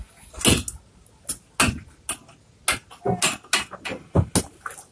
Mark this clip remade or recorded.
recorded